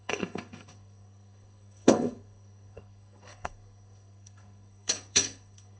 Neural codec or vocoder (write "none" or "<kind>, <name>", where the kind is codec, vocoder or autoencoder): codec, SNAC